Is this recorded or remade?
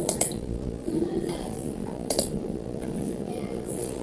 remade